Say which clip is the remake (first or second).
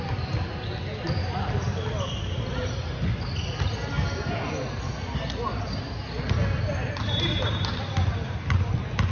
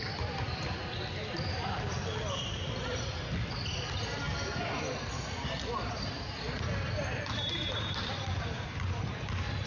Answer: second